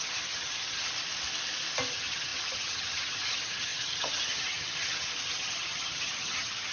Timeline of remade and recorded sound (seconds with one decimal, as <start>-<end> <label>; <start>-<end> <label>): 0.0-0.9 remade; 0.9-1.9 recorded; 1.9-6.7 remade